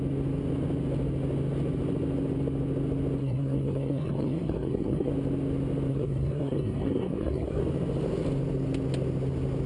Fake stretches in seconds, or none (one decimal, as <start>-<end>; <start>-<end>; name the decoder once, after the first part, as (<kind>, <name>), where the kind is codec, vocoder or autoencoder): 3.2-5.1 (codec, SNAC); 5.9-7.6